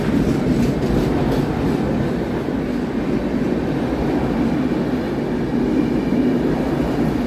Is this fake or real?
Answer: real